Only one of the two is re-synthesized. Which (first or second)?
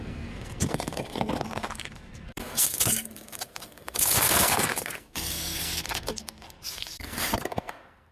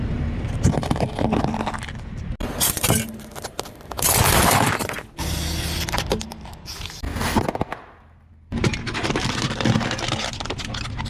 first